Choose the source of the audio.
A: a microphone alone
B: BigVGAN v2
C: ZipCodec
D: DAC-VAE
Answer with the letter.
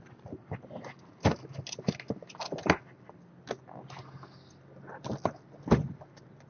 A